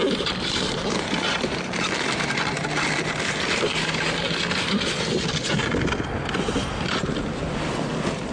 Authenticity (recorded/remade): recorded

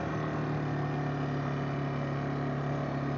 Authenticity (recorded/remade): recorded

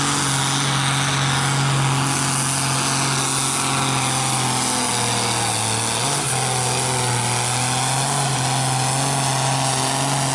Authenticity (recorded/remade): recorded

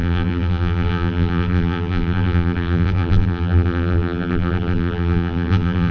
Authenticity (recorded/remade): remade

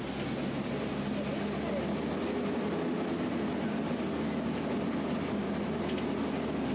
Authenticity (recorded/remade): recorded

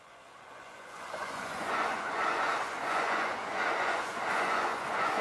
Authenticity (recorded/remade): remade